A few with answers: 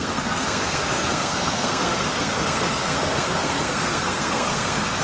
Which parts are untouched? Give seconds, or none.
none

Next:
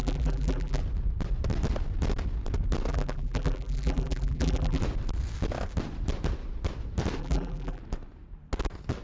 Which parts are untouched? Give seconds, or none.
0.8-2.9; 4.8-7.2; 7.8-9.0

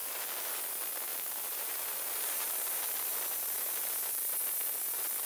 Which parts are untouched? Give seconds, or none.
0.0-1.1; 4.3-5.3

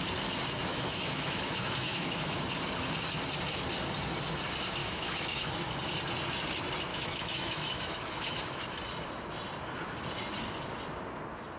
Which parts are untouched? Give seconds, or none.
0.0-0.7; 2.4-4.8; 5.5-6.9; 8.8-11.6